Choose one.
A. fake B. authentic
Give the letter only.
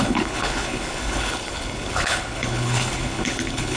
A